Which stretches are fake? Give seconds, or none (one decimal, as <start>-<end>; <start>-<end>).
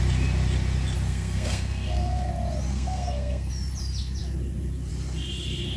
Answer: 1.1-2.3; 2.7-3.5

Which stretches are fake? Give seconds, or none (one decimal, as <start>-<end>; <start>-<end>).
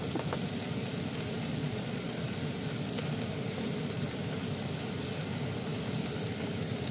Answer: 1.6-2.3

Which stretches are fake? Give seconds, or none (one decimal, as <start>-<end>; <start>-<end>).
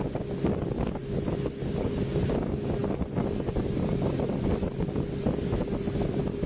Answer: none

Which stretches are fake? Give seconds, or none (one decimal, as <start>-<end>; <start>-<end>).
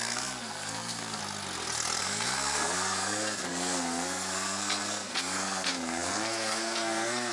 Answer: 0.0-1.2; 2.0-7.3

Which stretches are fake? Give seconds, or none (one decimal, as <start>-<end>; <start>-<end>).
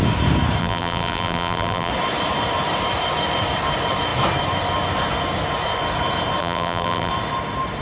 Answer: 0.6-1.9; 6.4-7.1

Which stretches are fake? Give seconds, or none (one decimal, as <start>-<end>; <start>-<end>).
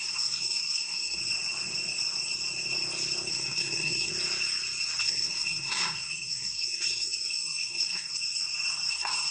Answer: 0.0-1.2; 3.3-4.1; 5.0-8.2; 8.9-9.3